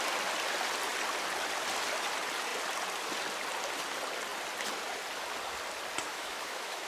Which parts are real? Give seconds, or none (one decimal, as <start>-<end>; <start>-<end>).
0.0-6.1